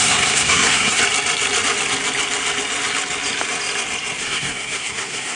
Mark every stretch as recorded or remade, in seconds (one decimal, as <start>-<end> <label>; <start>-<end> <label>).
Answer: 0.0-1.0 remade; 1.0-4.2 recorded; 4.2-5.4 remade